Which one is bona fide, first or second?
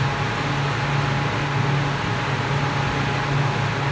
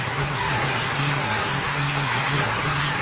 first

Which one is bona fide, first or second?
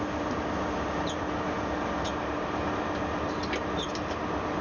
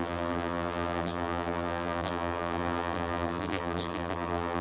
first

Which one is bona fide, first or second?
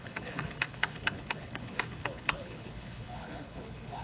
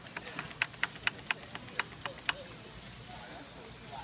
second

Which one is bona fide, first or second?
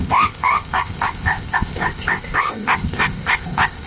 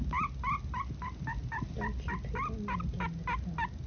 second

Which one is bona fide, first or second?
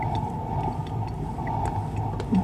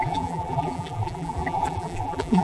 first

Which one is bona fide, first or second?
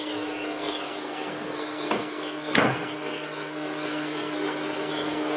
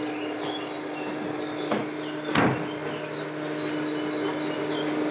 second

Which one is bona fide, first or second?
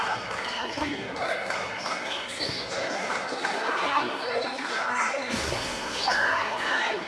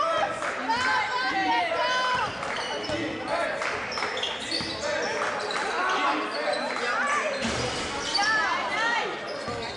second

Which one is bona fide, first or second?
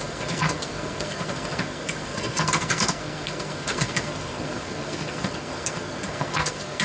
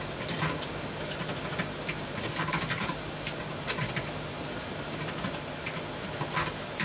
second